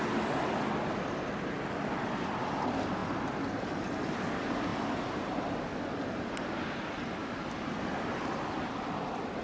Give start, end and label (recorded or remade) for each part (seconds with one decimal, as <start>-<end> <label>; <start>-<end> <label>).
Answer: 0.0-9.4 recorded